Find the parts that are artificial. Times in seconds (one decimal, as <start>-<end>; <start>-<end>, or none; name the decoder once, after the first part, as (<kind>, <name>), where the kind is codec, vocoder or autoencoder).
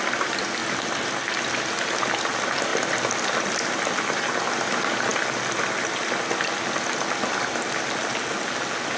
none